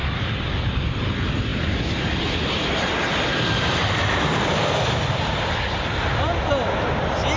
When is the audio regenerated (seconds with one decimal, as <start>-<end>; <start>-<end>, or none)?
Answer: 0.0-1.0; 1.5-5.5